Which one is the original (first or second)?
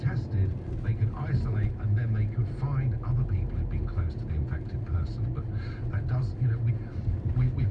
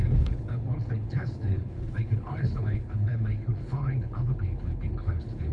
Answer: first